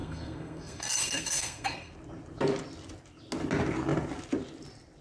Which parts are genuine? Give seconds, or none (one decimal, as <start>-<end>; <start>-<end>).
1.9-5.0